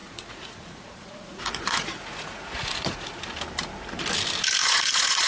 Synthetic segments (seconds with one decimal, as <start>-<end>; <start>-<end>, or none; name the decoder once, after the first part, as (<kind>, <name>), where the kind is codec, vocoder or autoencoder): 0.0-3.2 (vocoder, Vocos); 4.6-5.3